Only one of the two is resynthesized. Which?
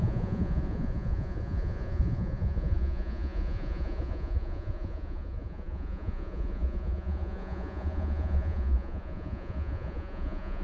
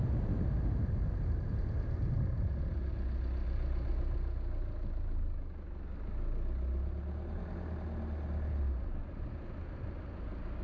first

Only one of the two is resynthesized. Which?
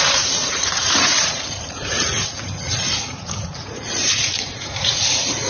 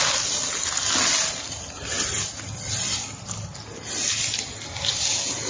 first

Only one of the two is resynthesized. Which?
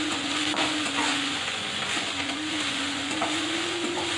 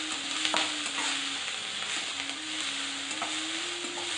first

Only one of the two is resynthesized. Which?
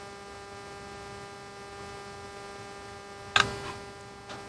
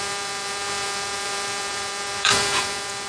second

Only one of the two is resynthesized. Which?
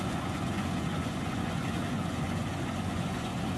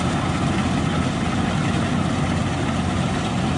first